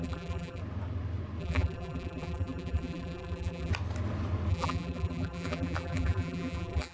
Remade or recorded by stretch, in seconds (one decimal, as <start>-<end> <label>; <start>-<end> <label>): 0.0-0.6 remade; 0.6-1.4 recorded; 1.4-3.7 remade; 3.7-4.5 recorded; 4.5-6.9 remade